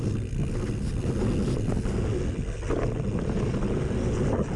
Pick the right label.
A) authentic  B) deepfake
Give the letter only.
A